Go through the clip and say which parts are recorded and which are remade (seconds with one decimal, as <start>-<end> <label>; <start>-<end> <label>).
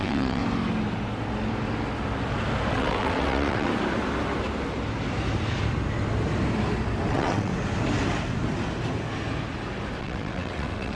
0.0-0.4 remade; 0.4-2.7 recorded; 2.7-3.7 remade; 3.7-7.1 recorded; 7.1-7.5 remade; 7.5-10.0 recorded; 10.0-11.0 remade